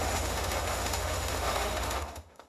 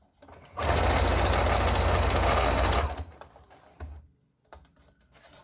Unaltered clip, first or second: second